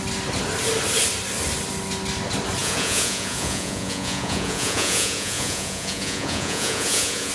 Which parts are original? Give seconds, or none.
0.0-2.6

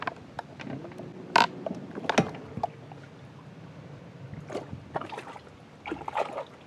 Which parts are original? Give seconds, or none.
0.0-6.7